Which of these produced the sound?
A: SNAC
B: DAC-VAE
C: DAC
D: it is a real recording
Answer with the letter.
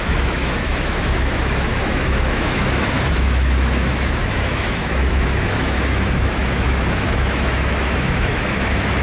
B